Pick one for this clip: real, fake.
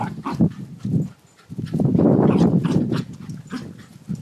real